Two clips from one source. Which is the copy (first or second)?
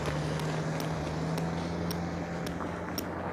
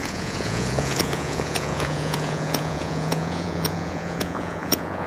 second